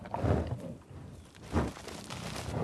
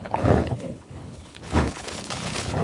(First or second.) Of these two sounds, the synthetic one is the second